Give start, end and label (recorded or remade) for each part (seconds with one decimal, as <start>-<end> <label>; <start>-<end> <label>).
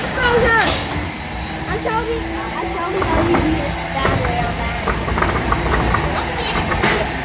0.0-0.9 remade; 0.9-7.2 recorded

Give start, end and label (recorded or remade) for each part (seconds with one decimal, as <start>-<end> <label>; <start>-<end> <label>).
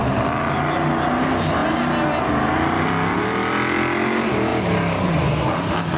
0.0-6.0 recorded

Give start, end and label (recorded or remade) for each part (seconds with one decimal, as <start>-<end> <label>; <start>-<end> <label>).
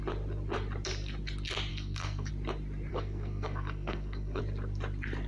0.0-1.7 recorded; 1.7-2.3 remade; 2.3-2.9 recorded; 2.9-4.4 remade; 4.4-5.3 recorded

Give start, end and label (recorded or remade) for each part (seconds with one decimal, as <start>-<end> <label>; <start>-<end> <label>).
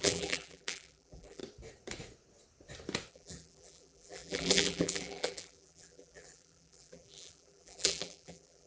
0.0-1.4 remade; 1.4-3.1 recorded; 3.1-8.7 remade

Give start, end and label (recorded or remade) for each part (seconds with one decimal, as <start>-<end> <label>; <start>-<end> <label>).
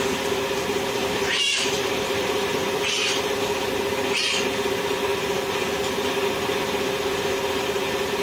0.0-1.0 recorded; 1.0-3.7 remade; 3.7-8.2 recorded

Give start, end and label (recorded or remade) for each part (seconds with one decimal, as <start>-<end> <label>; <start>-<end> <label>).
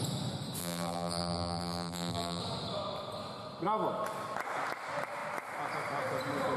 0.0-0.6 recorded; 0.6-2.4 remade; 2.4-6.6 recorded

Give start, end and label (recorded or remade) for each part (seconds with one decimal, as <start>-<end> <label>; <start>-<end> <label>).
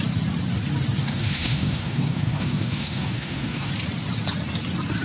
0.0-1.0 recorded; 1.0-3.7 remade; 3.7-5.0 recorded